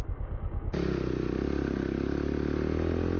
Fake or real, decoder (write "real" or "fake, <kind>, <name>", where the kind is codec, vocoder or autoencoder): real